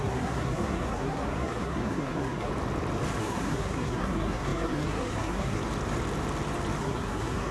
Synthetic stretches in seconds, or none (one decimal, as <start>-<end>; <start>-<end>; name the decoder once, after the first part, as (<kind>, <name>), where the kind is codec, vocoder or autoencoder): 0.0-2.5 (codec, SNAC); 3.2-5.6; 6.8-7.5